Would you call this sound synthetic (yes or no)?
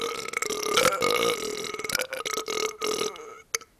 no